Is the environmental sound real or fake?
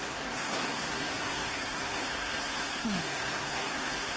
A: fake